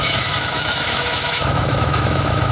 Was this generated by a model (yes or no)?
yes